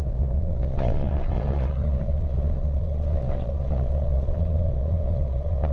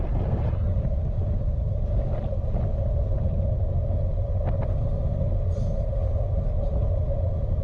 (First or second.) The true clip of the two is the second